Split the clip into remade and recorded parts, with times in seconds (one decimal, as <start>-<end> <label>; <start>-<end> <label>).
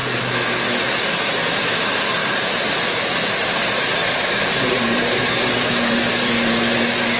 0.0-2.2 recorded; 2.2-3.2 remade; 3.2-4.0 recorded; 4.0-6.5 remade; 6.5-7.2 recorded